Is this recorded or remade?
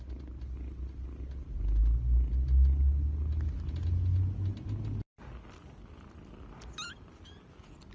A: recorded